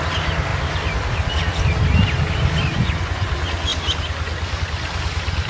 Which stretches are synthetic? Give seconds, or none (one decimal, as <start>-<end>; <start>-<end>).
2.7-3.3